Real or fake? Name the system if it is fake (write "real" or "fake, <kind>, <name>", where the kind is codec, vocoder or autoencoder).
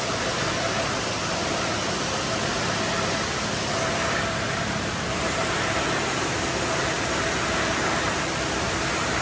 real